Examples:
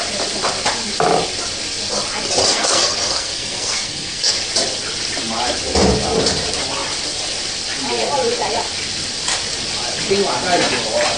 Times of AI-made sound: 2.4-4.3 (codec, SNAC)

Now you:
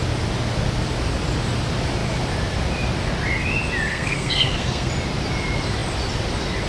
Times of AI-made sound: 3.9-4.9 (codec, SNAC)

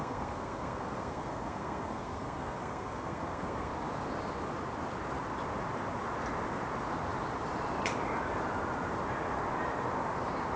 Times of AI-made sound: 0.0-3.7 (codec, SNAC)

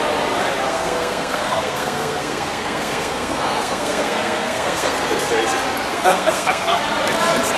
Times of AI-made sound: 0.7-5.3 (codec, SNAC); 5.9-6.8